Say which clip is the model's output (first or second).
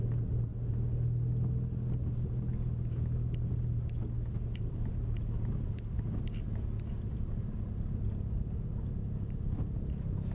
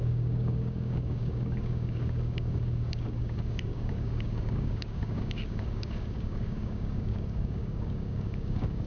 second